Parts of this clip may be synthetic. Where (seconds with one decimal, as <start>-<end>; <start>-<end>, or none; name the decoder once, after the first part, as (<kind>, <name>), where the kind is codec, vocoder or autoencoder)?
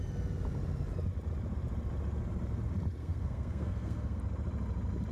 3.0-4.2 (codec, SNAC)